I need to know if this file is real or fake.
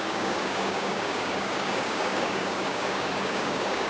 fake